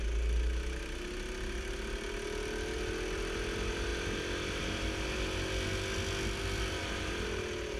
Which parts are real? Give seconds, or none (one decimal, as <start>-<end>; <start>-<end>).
0.0-7.8